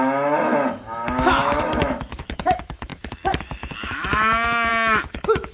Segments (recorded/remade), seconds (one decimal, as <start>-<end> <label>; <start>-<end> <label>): 0.0-5.5 remade